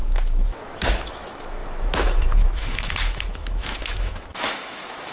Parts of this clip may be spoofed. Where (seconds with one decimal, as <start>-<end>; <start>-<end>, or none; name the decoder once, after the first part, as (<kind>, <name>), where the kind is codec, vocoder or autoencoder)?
0.0-5.1 (autoencoder, DAC-VAE)